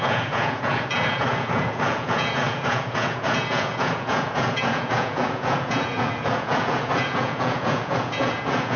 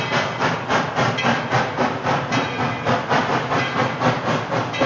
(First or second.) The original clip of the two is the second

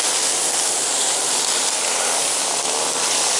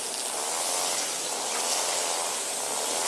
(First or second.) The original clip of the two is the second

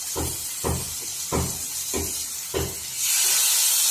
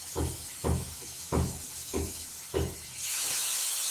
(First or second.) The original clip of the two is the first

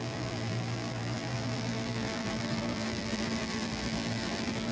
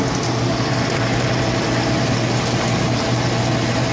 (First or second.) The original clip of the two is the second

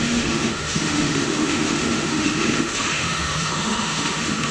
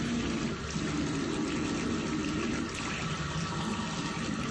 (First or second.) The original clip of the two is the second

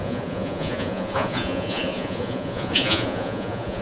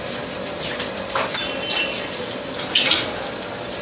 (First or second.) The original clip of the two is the second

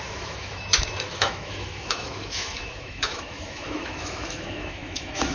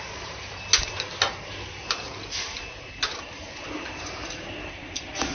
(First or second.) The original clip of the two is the second